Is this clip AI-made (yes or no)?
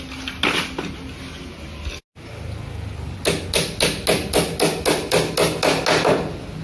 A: no